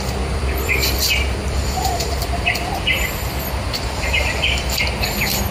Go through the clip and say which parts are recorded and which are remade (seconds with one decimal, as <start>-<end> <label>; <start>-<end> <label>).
0.0-5.5 remade